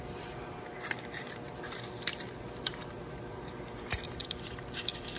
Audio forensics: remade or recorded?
remade